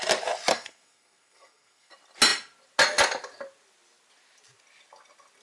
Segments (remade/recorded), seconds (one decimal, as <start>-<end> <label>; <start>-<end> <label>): 0.0-0.5 recorded; 0.5-1.9 remade; 1.9-5.4 recorded